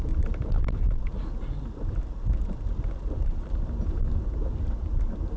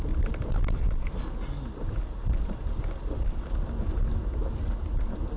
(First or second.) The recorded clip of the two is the second